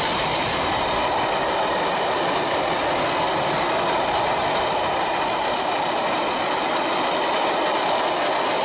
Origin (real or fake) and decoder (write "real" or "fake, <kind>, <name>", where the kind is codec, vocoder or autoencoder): real